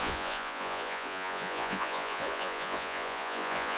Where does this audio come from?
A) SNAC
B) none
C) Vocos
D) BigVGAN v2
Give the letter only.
C